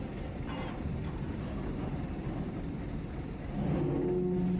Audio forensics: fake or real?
real